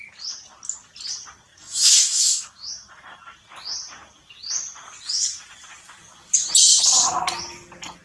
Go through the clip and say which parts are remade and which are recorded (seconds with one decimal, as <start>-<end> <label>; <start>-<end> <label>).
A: 0.0-1.5 recorded; 1.5-3.2 remade; 3.2-8.0 recorded